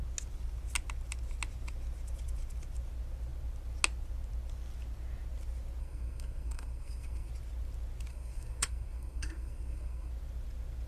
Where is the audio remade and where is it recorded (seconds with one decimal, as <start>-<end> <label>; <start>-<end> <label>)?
0.0-5.8 recorded; 5.8-7.3 remade; 7.3-8.1 recorded; 8.1-10.1 remade; 10.1-10.9 recorded